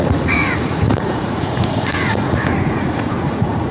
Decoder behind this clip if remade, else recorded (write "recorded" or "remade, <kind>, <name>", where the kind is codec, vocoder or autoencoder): remade, vocoder, Vocos